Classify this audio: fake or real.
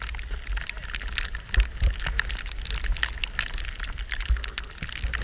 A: real